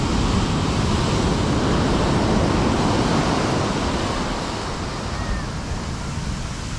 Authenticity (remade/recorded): recorded